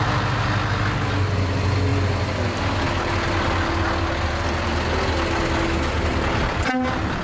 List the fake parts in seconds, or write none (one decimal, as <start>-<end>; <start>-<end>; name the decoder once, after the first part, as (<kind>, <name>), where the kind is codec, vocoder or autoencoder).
none